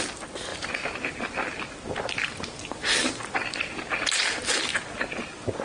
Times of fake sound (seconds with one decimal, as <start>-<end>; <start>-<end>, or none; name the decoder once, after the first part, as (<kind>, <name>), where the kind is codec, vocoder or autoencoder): none